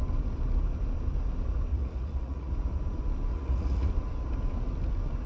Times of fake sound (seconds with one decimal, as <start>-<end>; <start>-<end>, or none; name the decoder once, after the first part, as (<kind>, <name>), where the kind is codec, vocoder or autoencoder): 1.7-2.5 (vocoder, Vocos); 3.3-3.9